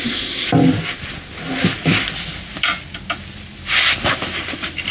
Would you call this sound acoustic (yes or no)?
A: yes